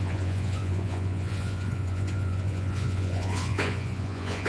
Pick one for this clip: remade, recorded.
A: remade